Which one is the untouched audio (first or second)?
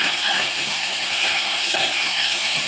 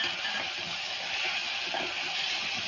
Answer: second